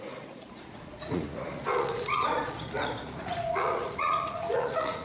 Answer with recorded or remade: remade